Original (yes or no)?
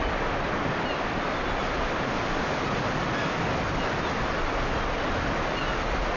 yes